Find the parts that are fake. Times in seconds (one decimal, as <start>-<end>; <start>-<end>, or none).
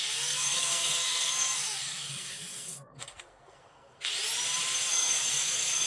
0.0-4.1; 4.9-5.9